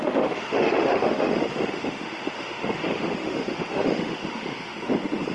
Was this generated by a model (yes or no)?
yes